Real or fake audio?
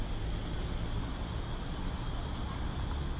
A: real